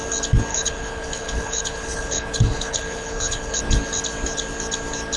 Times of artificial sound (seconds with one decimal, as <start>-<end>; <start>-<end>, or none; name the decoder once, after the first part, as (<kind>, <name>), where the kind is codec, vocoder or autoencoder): 0.5-3.6 (codec, HILCodec)